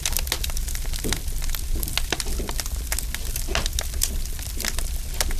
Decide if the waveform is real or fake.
real